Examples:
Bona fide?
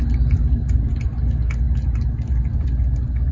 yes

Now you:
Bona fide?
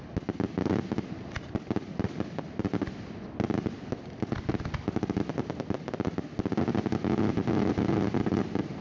yes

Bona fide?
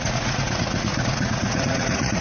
no